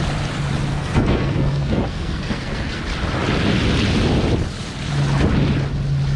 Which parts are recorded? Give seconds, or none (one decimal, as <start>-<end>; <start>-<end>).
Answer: 0.0-0.7; 2.8-6.2